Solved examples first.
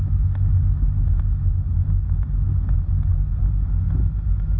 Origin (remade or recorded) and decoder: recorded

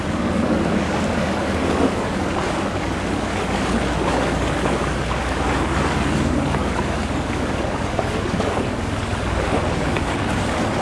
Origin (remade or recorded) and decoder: remade, codec, DAC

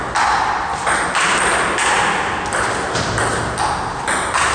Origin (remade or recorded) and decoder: recorded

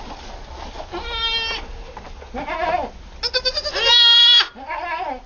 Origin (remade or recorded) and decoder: recorded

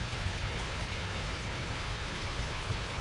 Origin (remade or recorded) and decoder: remade, codec, HILCodec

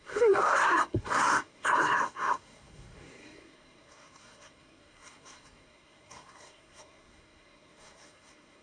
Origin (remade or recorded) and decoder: remade, codec, SNAC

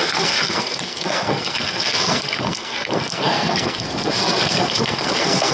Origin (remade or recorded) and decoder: remade, codec, SNAC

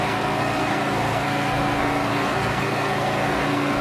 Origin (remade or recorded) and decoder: remade, codec, SNAC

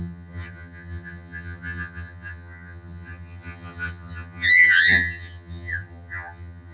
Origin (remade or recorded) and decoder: remade, vocoder, HiFi-GAN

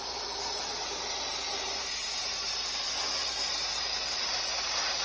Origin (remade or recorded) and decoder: remade, vocoder, BigVGAN v2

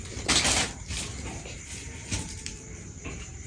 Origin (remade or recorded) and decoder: remade, vocoder, BigVGAN v2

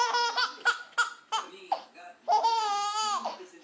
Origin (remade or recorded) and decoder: recorded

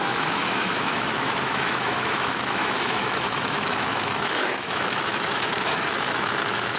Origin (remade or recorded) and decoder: remade, autoencoder, DAC-VAE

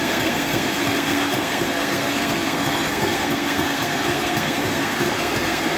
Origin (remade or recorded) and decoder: remade, codec, SNAC